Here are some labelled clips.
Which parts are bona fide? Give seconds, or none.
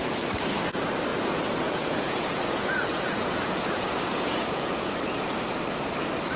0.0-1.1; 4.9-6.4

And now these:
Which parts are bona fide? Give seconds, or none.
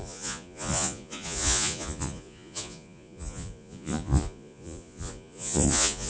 none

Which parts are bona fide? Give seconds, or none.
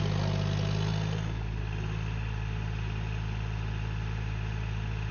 0.0-5.1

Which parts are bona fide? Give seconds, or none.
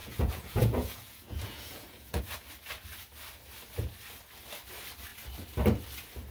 2.2-6.3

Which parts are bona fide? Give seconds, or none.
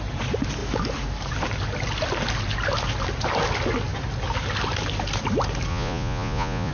0.0-5.7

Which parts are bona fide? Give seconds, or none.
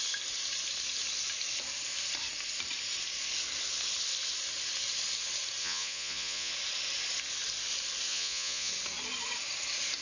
0.0-5.6; 6.5-8.1; 8.7-10.0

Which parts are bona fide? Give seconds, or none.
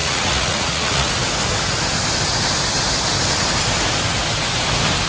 1.1-5.1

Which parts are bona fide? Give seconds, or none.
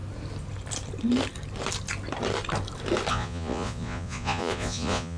0.0-3.1